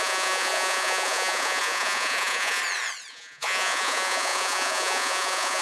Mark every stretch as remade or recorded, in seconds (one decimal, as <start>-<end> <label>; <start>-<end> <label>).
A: 0.0-2.6 remade; 2.6-3.1 recorded; 3.1-5.6 remade